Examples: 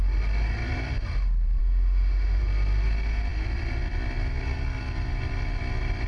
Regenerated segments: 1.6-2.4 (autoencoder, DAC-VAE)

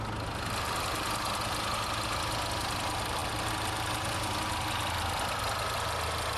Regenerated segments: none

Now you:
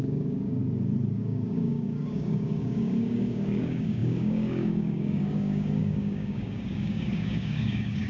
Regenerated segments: 0.0-0.6 (codec, DAC); 1.2-8.1

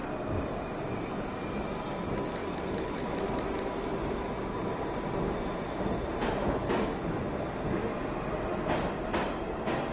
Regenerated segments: 2.4-4.3 (autoencoder, DAC-VAE)